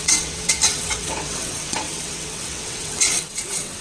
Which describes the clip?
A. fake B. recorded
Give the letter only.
A